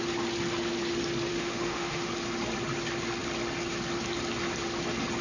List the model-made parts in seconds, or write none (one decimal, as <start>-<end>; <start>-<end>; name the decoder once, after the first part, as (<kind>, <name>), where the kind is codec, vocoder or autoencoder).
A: 1.3-2.1 (autoencoder, DAC-VAE)